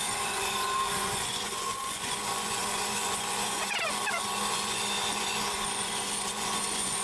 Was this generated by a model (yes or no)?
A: yes